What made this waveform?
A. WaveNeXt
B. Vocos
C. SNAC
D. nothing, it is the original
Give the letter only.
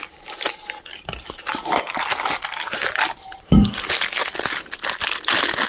D